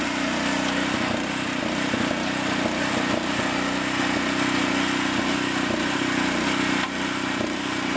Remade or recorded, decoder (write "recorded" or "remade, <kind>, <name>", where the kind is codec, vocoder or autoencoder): recorded